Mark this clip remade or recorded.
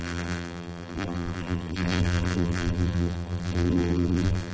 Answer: remade